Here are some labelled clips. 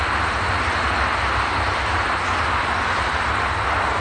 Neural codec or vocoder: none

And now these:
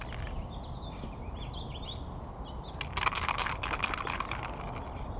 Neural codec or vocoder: none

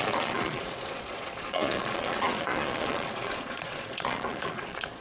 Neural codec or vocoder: vocoder, Vocos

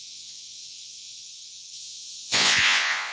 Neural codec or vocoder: vocoder, Vocos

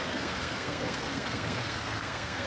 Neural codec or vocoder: codec, SNAC